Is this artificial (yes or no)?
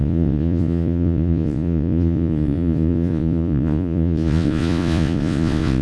yes